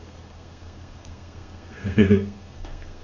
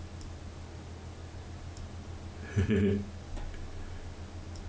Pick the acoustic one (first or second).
second